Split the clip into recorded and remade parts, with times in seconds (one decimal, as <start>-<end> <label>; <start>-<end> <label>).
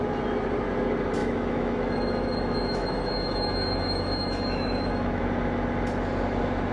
0.0-1.2 recorded; 1.2-5.2 remade; 5.2-6.7 recorded